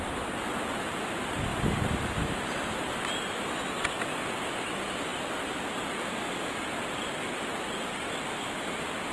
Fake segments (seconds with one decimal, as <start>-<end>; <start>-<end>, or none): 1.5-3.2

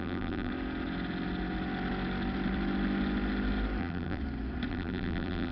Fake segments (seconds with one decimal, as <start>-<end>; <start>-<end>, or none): 0.0-0.5; 3.8-4.2; 4.7-5.5

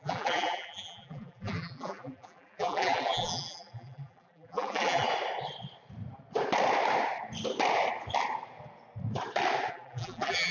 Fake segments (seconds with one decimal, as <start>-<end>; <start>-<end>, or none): 0.0-5.1; 9.7-10.5

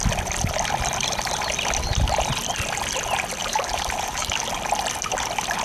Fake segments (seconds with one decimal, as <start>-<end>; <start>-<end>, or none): 3.4-4.4